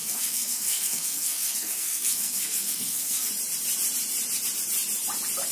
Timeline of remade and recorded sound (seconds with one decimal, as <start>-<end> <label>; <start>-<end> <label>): 0.0-3.3 remade; 3.3-5.5 recorded